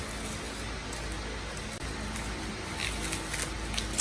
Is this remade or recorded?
recorded